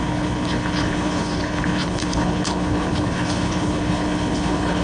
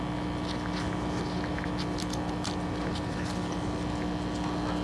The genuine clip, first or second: second